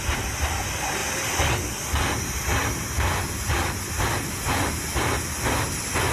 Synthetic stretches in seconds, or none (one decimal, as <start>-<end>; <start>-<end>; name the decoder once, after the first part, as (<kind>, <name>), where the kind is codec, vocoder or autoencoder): none